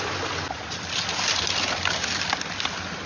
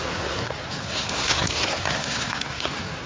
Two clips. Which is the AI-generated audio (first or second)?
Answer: second